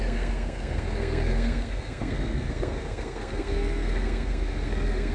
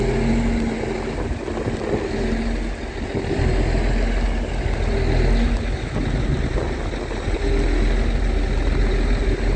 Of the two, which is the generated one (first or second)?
first